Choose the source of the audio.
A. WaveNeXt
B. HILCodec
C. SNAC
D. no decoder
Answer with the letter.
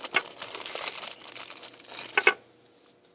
D